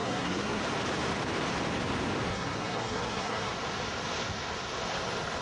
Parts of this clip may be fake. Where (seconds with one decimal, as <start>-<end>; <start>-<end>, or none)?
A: 0.0-0.6; 2.3-3.5